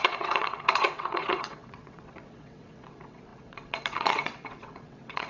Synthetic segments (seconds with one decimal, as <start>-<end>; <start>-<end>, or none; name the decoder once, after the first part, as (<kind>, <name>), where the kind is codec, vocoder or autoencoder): 0.0-5.3 (vocoder, WaveNeXt)